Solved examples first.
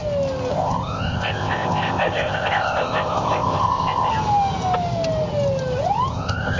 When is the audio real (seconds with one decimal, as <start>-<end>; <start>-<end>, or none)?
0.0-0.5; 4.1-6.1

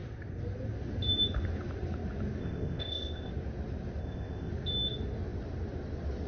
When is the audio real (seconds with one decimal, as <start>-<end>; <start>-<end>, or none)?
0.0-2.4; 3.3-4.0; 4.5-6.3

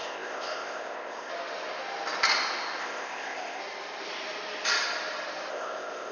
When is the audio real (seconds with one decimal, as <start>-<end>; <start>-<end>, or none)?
1.3-2.8; 3.6-5.5